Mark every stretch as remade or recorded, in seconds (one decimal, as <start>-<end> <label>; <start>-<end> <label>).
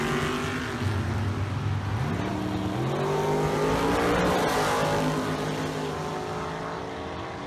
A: 0.0-7.5 recorded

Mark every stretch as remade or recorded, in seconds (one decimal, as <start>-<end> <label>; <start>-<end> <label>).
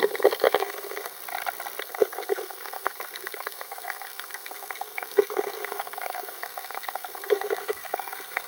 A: 0.0-1.2 remade; 1.2-1.8 recorded; 1.8-8.5 remade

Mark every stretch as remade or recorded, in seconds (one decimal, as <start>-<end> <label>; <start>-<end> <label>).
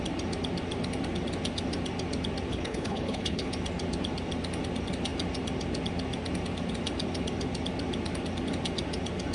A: 0.0-2.5 recorded; 2.5-3.5 remade; 3.5-9.3 recorded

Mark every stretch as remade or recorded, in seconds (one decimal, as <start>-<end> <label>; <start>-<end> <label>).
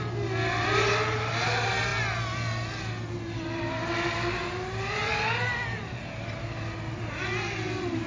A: 0.0-1.9 remade; 1.9-2.8 recorded; 2.8-8.1 remade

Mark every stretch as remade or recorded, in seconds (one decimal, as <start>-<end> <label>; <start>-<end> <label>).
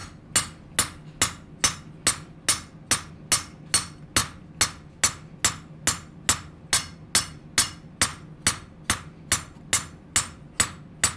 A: 0.0-11.2 recorded